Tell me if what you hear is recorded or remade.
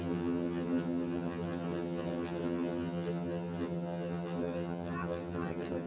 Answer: remade